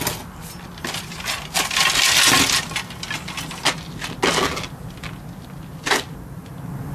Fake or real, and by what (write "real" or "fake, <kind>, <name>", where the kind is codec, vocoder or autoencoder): real